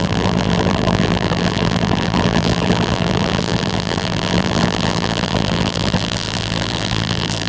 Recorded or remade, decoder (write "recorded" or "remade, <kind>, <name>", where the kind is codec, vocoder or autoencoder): remade, vocoder, BigVGAN v2